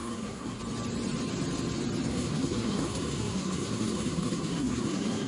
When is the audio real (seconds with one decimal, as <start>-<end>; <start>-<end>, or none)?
0.6-2.1